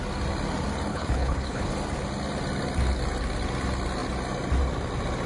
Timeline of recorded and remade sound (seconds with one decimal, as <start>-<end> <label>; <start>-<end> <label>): 0.0-0.9 recorded; 0.9-1.7 remade; 1.7-5.3 recorded